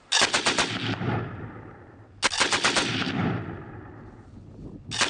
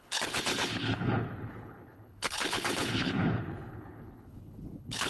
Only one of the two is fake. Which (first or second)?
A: second